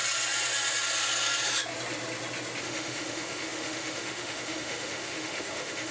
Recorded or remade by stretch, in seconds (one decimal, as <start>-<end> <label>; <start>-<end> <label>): 0.0-2.6 recorded; 2.6-5.9 remade